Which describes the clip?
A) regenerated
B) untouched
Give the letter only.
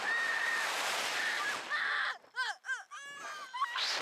B